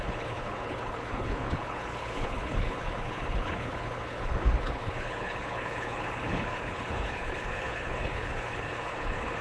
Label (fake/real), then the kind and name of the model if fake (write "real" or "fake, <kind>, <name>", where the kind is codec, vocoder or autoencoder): fake, codec, HILCodec